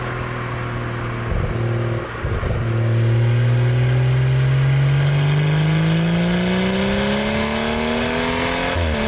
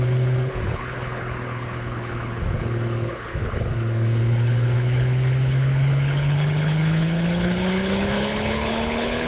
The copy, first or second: second